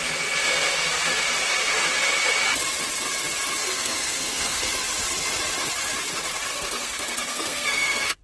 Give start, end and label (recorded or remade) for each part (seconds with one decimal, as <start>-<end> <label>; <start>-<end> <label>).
0.0-3.6 recorded; 3.6-4.7 remade; 4.7-6.5 recorded; 6.5-8.2 remade